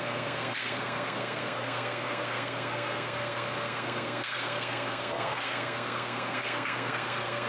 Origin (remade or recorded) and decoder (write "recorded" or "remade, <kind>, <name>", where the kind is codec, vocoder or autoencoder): remade, codec, SNAC